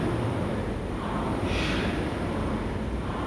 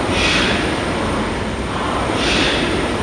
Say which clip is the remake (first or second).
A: second